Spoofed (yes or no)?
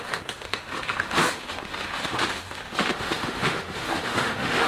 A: yes